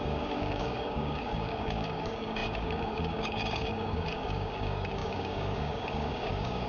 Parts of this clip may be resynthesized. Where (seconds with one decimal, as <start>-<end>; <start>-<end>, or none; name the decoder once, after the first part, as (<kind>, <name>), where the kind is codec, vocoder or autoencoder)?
0.0-6.7 (codec, DAC)